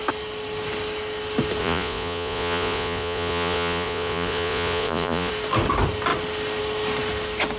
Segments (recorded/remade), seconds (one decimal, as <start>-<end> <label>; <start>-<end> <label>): 0.0-1.6 recorded; 1.6-5.3 remade; 5.3-7.6 recorded